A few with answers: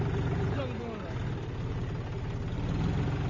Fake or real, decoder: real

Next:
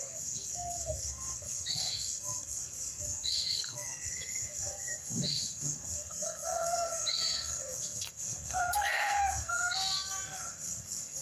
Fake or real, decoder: fake, codec, SNAC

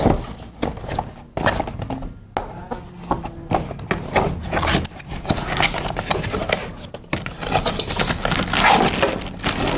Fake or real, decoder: real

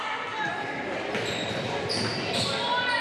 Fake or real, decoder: real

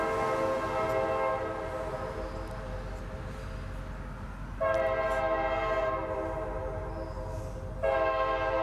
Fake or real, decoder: real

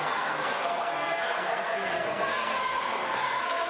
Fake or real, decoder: fake, codec, SNAC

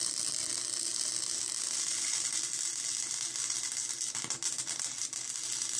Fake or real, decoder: real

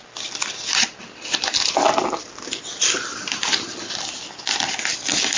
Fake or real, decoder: real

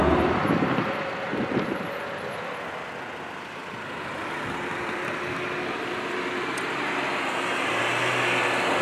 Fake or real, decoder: real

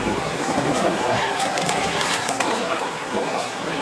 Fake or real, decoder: fake, codec, SNAC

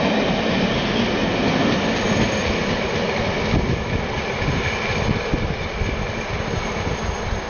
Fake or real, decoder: real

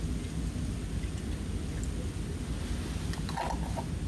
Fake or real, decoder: real